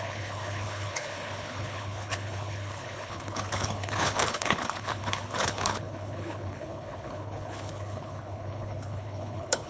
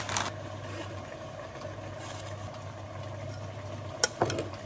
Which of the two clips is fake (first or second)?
first